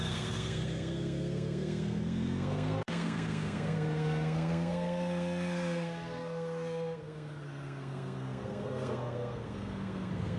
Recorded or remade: remade